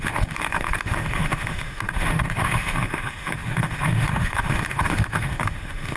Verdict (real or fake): fake